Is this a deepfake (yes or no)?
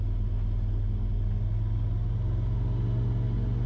no